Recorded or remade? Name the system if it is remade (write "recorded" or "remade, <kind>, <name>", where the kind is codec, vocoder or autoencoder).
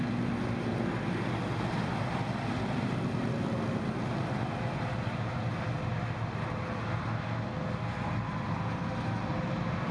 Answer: recorded